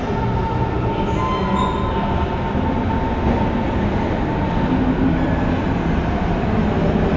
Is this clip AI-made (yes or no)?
no